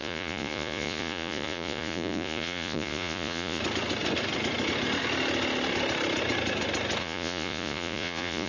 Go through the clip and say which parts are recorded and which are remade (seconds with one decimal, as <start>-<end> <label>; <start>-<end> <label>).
0.0-3.6 remade; 3.6-7.0 recorded; 7.0-8.5 remade